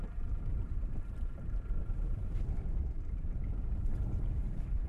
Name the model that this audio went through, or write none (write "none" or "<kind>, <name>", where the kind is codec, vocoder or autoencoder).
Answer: vocoder, BigVGAN v2